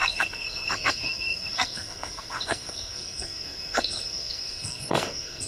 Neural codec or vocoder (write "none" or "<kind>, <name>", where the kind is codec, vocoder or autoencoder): codec, SNAC